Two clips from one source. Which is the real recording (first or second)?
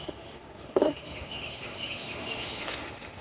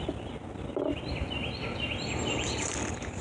second